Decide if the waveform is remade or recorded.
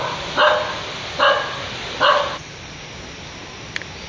recorded